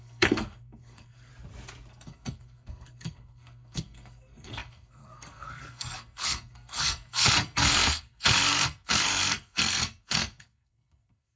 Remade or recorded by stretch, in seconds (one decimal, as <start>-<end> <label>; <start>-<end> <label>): 0.0-1.3 remade; 1.3-1.9 recorded; 1.9-11.4 remade